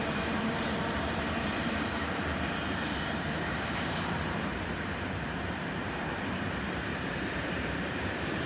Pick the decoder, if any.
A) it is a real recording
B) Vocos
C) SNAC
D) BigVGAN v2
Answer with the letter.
D